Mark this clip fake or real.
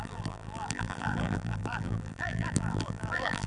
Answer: fake